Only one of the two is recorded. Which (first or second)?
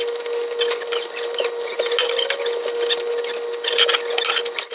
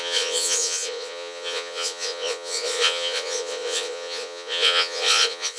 first